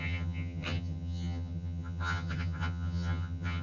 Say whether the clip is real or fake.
fake